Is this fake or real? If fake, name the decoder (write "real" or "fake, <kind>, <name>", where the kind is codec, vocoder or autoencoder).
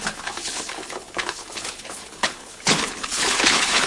fake, codec, HILCodec